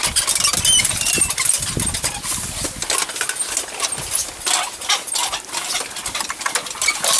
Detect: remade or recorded recorded